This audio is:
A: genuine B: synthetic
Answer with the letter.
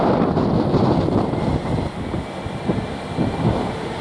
A